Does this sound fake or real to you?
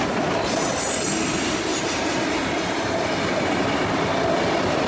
real